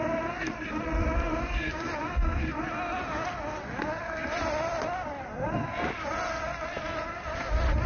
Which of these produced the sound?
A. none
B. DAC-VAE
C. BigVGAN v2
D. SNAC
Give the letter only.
C